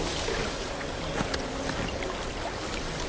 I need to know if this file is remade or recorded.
recorded